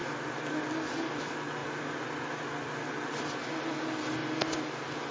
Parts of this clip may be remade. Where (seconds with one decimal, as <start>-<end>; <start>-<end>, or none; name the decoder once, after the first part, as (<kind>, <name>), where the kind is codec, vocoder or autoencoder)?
none